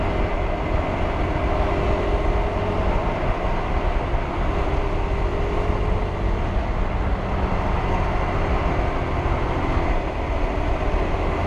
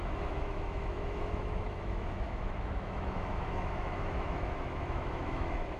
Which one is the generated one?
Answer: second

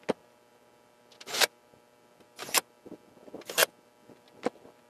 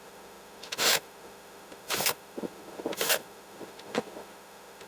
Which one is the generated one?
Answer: second